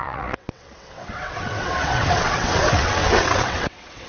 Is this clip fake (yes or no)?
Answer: yes